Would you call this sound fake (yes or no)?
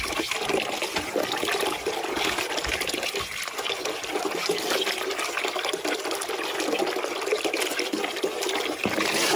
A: no